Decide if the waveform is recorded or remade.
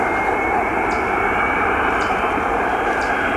remade